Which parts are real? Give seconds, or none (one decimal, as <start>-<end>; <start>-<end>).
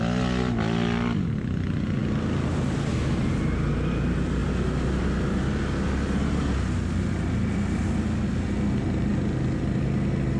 0.0-10.4